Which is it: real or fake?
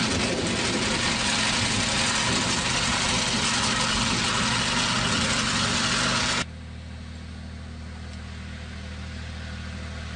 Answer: real